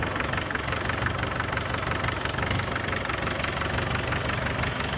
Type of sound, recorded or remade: recorded